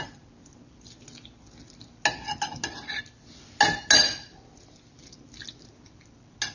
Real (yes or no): yes